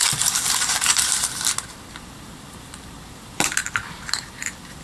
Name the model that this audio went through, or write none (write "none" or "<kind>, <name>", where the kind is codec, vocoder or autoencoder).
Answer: vocoder, BigVGAN v2